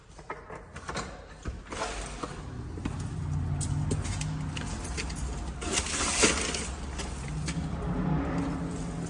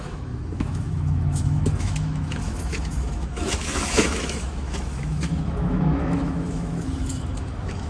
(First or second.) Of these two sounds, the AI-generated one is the second